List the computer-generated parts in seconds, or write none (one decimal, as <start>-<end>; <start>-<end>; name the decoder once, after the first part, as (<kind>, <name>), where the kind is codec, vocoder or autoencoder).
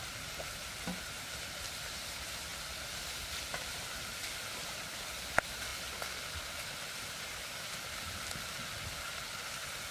none